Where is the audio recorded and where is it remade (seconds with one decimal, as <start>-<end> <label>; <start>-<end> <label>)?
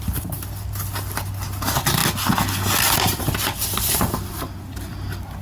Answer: 0.0-5.4 recorded